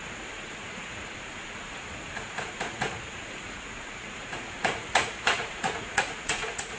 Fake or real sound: fake